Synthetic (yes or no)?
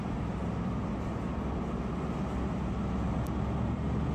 no